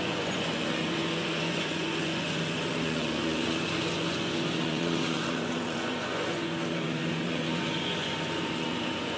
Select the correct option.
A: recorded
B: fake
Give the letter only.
B